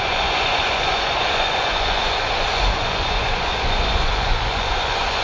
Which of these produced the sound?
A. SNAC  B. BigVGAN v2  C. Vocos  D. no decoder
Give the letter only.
C